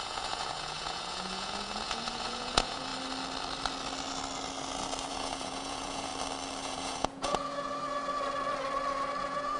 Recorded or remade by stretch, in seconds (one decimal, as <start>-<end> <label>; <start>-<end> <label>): 0.0-2.9 remade; 2.9-5.1 recorded; 5.1-6.1 remade; 6.1-6.6 recorded; 6.6-7.7 remade; 7.7-9.2 recorded; 9.2-9.6 remade